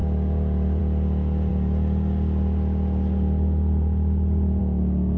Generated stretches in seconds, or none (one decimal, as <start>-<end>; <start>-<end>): none